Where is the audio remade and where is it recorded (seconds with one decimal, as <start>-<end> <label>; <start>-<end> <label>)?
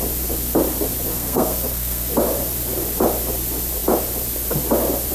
0.0-1.1 recorded; 1.1-2.1 remade; 2.1-5.1 recorded